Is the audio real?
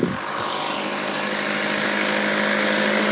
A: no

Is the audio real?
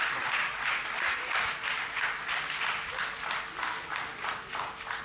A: yes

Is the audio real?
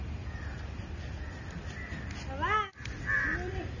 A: yes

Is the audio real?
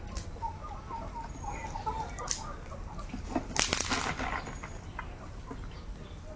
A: yes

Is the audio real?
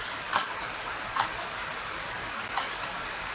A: no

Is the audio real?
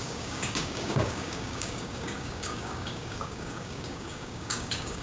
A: no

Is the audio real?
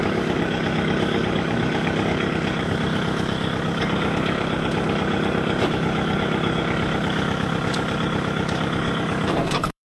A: no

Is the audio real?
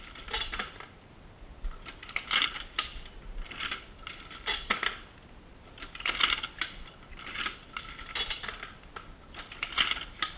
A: yes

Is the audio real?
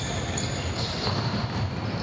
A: yes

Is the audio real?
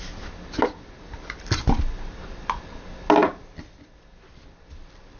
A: yes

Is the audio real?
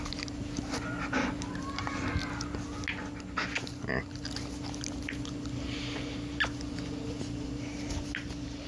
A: yes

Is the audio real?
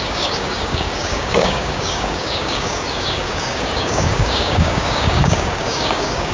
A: no